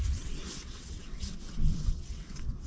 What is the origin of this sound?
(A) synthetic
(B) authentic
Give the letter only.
A